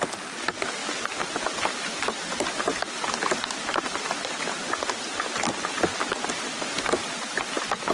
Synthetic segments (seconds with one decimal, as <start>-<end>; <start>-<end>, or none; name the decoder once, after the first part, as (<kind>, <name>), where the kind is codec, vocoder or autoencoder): none